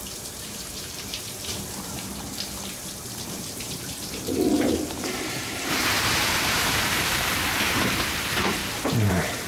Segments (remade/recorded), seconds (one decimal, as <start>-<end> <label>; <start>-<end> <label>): 0.0-8.6 remade; 8.6-9.1 recorded; 9.1-9.5 remade